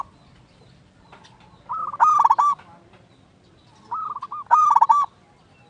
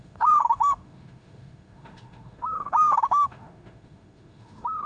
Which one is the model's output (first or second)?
second